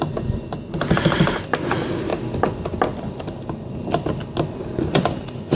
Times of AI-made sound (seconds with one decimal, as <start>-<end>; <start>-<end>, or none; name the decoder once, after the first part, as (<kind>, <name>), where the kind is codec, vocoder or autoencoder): none